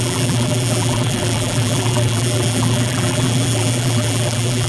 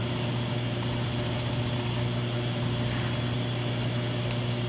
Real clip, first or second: second